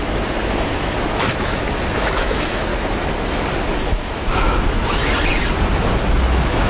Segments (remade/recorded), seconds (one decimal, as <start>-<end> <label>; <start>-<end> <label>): 0.0-2.7 remade; 2.7-3.8 recorded; 3.8-5.0 remade; 5.0-6.1 recorded; 6.1-6.7 remade